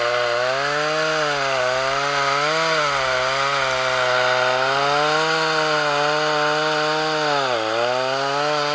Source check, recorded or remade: recorded